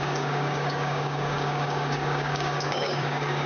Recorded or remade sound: remade